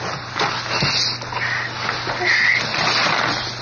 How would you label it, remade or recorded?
recorded